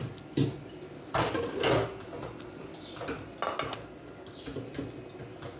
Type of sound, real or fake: real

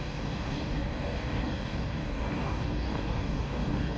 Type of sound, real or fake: fake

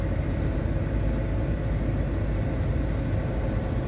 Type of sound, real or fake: real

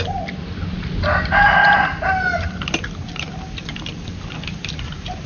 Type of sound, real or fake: real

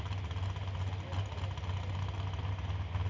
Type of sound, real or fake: real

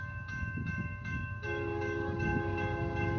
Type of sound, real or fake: fake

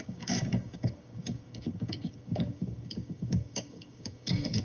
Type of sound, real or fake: fake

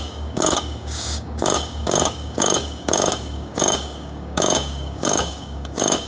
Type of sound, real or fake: fake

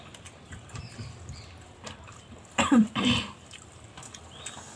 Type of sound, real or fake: real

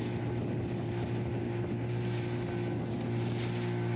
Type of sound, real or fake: real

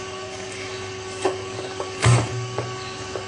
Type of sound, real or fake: fake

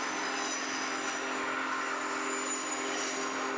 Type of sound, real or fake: real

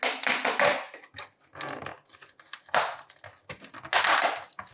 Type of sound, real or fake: real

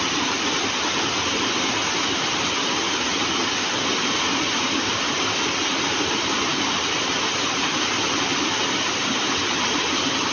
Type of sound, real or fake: real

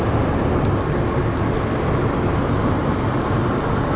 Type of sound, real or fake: real